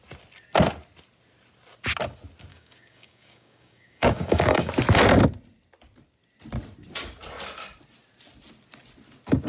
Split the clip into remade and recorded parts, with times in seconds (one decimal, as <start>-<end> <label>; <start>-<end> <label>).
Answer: 0.0-2.5 recorded; 2.5-4.7 remade; 4.7-9.5 recorded